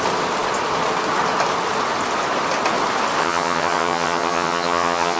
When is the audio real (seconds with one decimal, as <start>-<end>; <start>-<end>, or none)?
0.0-3.2